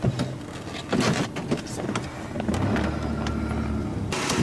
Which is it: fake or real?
real